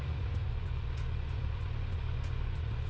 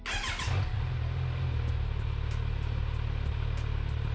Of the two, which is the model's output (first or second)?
first